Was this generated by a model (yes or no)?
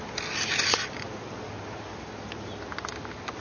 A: no